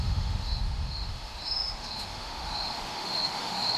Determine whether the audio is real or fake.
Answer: fake